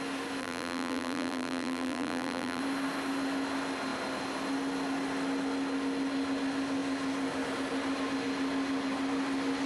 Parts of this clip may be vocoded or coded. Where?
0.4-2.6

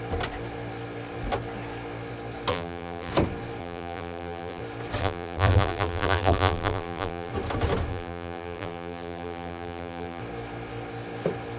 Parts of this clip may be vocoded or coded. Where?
2.5-3.1; 3.6-4.6; 5.0-7.3; 7.9-10.2

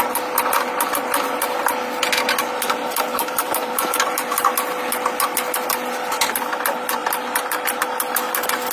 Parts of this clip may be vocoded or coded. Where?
3.1-4.5

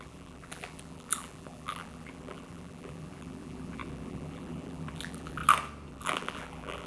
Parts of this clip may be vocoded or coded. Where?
0.0-5.4; 5.9-6.9

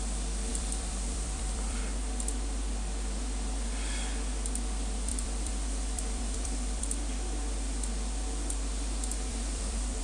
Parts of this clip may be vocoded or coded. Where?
0.5-1.8; 5.1-6.8; 9.3-10.0

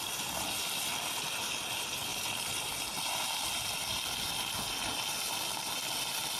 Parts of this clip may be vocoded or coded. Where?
none

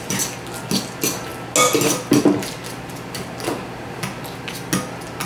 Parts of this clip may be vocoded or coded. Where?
none